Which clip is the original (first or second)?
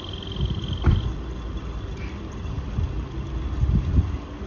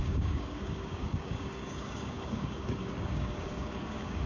first